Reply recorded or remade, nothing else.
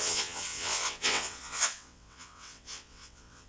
remade